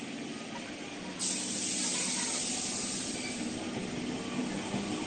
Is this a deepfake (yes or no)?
no